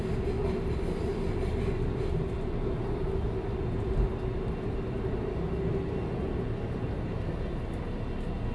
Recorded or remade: recorded